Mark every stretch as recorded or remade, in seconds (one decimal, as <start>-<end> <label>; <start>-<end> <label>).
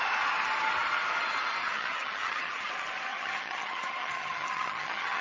0.0-1.6 recorded; 1.6-2.7 remade; 2.7-3.1 recorded; 3.1-5.2 remade